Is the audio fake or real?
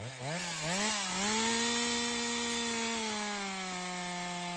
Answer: real